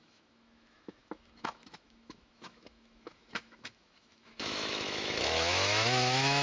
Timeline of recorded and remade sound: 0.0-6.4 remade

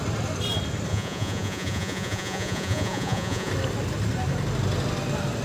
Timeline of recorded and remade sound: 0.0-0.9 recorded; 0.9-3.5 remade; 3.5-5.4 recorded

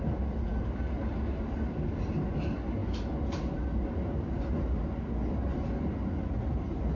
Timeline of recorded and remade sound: 0.0-7.0 recorded

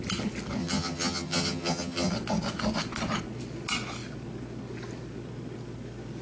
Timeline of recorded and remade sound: 0.0-0.6 recorded; 0.6-2.1 remade; 2.1-6.2 recorded

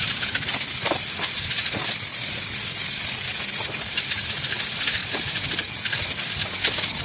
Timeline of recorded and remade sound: 0.0-7.0 recorded